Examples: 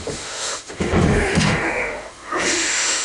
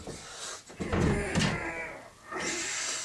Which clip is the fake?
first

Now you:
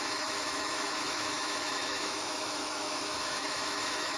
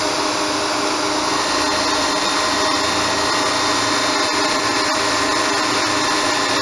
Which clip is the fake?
first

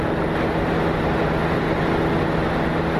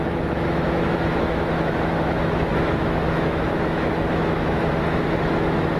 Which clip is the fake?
second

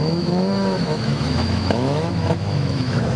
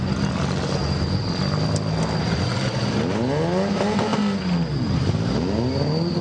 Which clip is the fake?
first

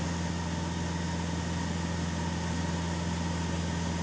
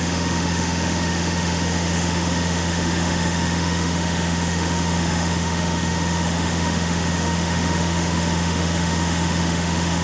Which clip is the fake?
second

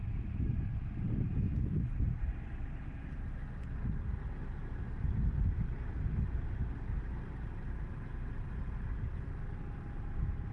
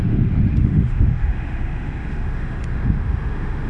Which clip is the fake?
second